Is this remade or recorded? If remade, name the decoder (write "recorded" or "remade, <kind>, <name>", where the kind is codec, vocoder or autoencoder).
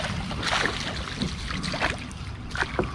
recorded